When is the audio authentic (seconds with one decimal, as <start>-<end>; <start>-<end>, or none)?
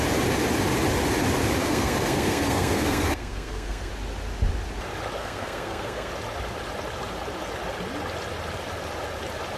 0.0-1.6; 3.9-5.2; 6.1-9.6